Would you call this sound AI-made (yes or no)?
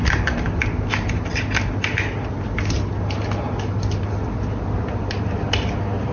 no